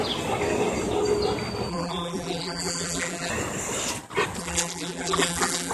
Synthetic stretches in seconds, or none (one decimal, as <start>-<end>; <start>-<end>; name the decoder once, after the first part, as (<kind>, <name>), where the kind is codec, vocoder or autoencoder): 1.7-3.3 (vocoder, BigVGAN v2); 4.4-5.7